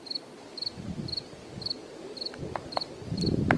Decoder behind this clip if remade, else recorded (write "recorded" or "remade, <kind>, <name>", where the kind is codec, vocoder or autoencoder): recorded